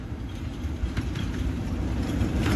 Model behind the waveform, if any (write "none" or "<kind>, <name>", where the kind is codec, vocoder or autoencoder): vocoder, BigVGAN v2